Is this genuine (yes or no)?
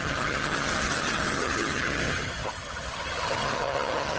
no